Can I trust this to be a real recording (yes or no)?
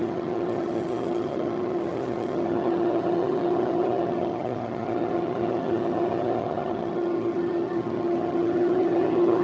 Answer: no